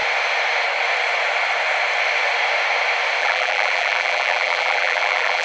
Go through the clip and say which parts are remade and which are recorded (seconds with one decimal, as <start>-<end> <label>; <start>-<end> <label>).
0.0-3.2 recorded; 3.2-5.4 remade